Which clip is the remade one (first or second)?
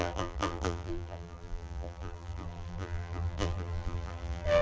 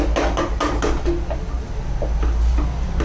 first